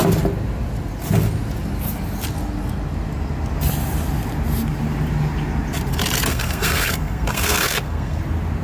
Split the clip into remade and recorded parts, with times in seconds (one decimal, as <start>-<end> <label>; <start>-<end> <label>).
0.0-6.3 recorded; 6.3-8.2 remade; 8.2-8.6 recorded